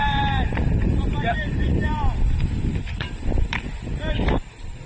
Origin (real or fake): fake